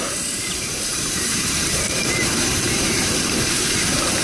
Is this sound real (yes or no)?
no